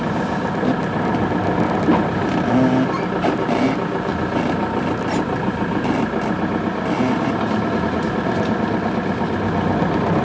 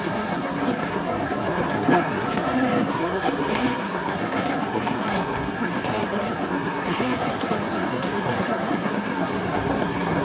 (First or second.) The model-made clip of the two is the second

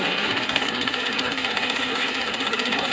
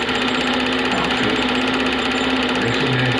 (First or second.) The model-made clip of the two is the first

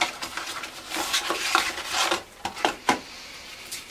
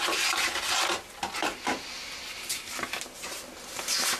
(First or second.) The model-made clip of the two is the first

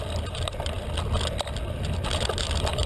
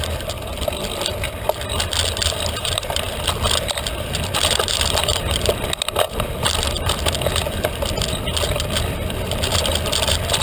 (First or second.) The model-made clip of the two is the second